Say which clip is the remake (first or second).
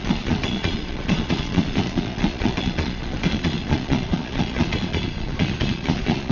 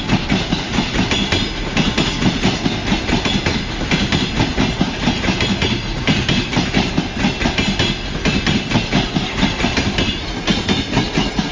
first